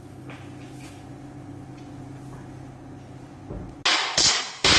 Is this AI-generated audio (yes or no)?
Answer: no